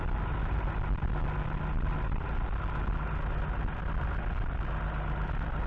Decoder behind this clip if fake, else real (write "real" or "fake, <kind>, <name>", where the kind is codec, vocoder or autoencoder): real